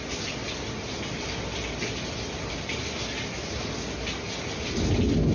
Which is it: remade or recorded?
recorded